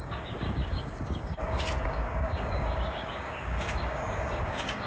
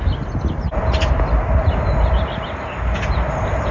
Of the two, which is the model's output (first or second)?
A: first